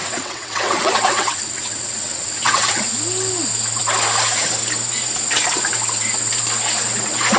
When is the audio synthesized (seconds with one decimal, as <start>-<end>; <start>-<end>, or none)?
0.0-2.9